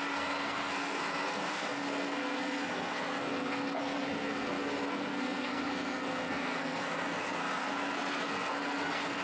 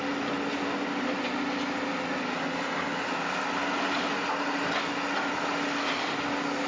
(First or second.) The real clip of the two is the second